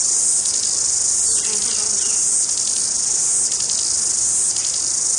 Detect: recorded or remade recorded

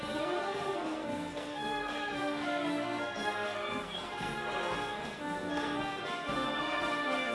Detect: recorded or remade remade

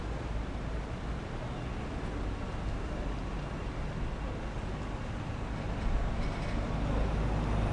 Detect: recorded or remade recorded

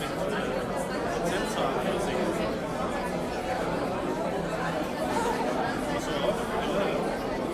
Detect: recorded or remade recorded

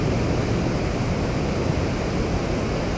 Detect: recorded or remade recorded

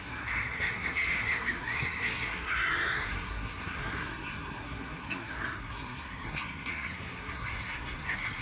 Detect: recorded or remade remade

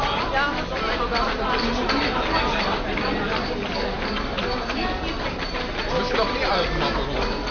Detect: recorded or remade recorded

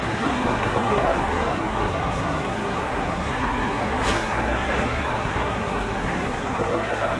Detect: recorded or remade remade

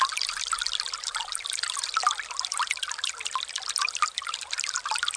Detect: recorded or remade recorded